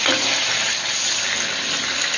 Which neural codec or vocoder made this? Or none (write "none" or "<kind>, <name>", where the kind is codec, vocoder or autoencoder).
none